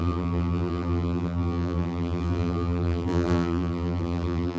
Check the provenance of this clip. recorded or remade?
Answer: remade